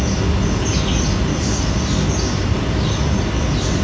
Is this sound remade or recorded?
recorded